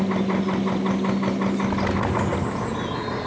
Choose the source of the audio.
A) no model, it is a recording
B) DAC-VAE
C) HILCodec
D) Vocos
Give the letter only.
A